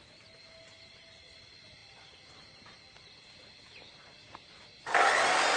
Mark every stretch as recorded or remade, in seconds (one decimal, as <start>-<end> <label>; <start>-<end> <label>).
0.0-5.6 recorded